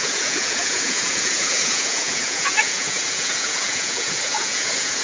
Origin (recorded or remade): remade